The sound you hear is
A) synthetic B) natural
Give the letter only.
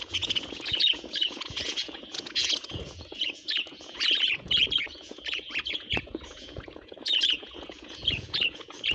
A